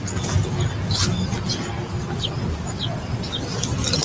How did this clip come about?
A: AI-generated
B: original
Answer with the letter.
B